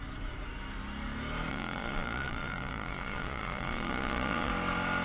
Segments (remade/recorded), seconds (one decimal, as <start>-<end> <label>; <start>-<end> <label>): 0.0-1.5 recorded; 1.5-4.5 remade; 4.5-5.0 recorded